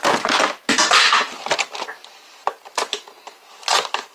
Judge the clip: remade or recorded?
recorded